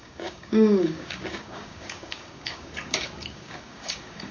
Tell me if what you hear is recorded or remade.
remade